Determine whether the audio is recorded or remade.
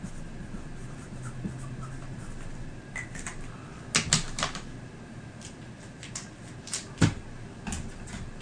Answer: recorded